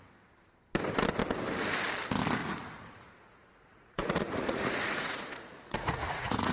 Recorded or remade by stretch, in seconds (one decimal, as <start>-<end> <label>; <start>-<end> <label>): 0.0-2.4 recorded; 2.4-6.5 remade